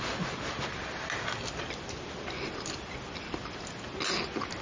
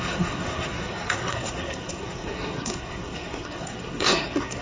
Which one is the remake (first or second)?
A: second